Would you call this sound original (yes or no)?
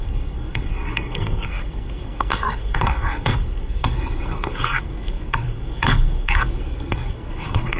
no